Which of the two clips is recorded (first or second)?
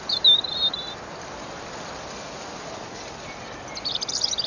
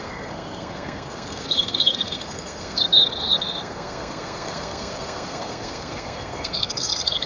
first